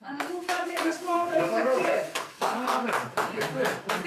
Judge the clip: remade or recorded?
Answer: remade